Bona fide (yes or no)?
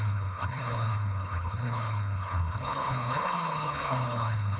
no